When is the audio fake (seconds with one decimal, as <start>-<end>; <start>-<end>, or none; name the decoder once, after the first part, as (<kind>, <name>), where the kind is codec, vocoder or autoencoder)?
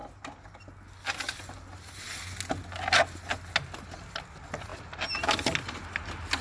none